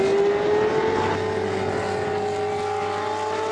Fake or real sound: real